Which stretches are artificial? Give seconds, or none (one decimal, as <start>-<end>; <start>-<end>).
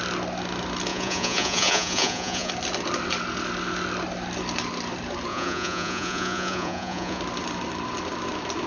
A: 0.9-2.5; 5.3-7.2